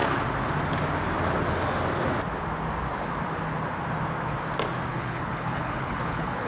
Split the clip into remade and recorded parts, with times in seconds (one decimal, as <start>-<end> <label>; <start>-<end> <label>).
0.0-4.9 recorded; 4.9-6.5 remade